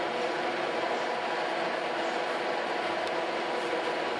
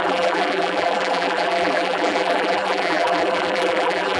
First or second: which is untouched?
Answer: first